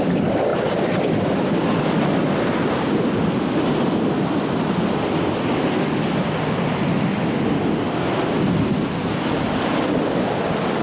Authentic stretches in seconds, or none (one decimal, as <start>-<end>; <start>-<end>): 0.0-10.8